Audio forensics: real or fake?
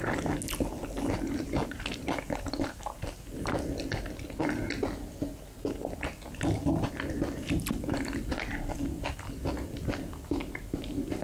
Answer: real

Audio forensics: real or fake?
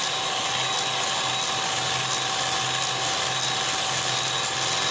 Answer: real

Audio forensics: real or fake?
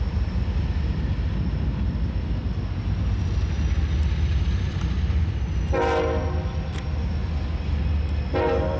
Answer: real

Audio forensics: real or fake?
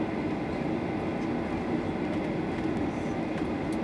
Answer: real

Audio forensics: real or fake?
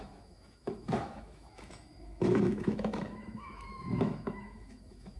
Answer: fake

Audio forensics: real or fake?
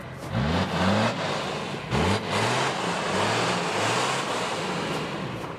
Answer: real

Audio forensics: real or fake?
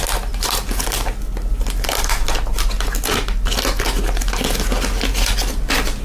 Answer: real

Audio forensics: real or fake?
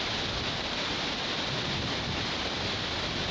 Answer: real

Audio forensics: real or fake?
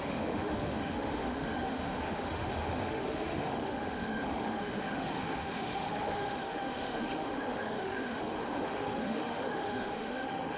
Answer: fake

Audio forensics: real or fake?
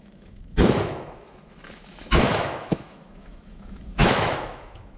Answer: fake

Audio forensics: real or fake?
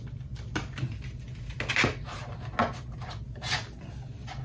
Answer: real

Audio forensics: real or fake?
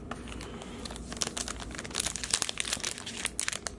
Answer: real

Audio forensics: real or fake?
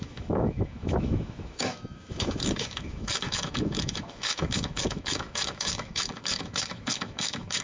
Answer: fake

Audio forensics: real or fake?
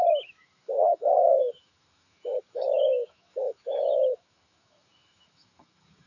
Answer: fake